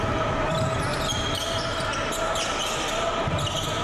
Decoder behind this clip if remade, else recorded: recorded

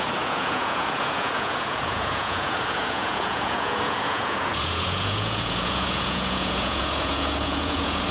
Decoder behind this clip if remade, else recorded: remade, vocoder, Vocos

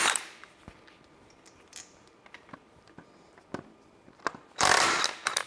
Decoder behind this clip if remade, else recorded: remade, vocoder, BigVGAN v2